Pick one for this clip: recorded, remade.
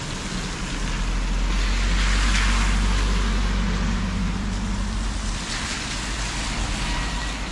recorded